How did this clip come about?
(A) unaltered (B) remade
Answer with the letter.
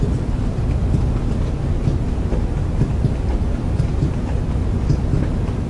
A